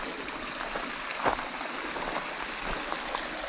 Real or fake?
real